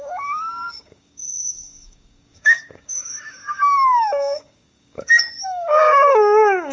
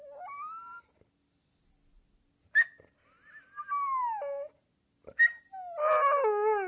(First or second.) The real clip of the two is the second